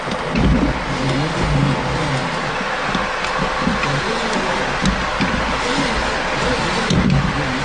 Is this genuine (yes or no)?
yes